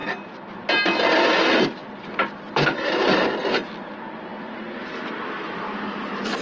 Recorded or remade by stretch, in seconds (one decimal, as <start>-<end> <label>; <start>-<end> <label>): 0.0-6.4 recorded